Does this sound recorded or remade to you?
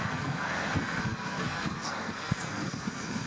remade